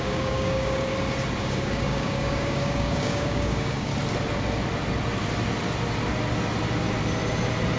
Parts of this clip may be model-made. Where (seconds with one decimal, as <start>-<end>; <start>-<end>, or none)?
0.0-0.9; 1.4-3.9